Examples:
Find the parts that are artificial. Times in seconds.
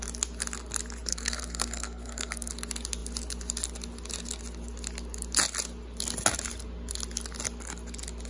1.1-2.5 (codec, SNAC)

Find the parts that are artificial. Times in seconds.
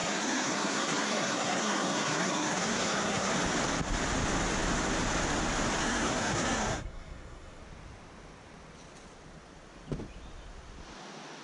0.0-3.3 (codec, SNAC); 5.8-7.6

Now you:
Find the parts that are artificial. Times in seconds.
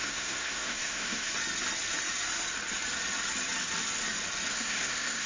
0.0-1.3 (codec, SNAC); 4.5-5.3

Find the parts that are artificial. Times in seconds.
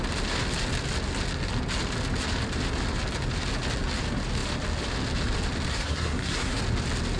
5.7-6.6 (codec, SNAC)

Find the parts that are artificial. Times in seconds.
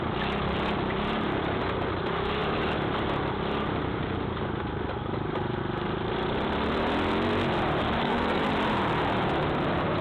8.0-8.5 (codec, SNAC)